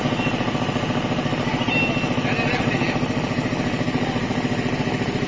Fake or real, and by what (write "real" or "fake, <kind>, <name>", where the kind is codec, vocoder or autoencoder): real